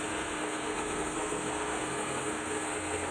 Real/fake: fake